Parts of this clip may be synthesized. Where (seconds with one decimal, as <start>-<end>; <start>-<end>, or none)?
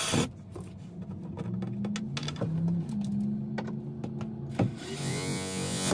5.0-5.9